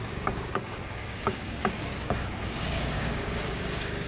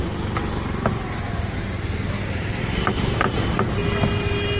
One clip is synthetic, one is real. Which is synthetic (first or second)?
first